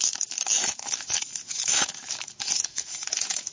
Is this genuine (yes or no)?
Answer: no